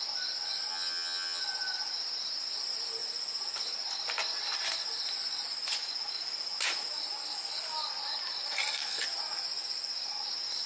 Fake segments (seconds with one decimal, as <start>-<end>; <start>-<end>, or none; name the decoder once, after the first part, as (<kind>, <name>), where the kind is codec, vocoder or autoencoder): 0.7-1.4 (vocoder, HiFi-GAN)